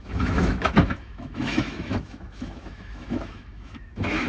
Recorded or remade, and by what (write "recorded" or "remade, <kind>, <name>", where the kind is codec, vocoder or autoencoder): remade, autoencoder, DAC-VAE